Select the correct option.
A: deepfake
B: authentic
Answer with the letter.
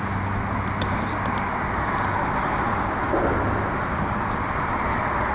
B